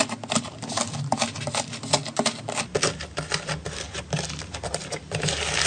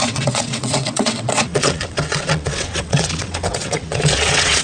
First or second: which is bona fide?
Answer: first